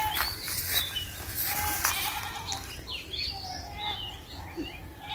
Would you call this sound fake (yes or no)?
no